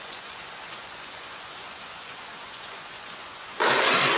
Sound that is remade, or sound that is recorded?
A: remade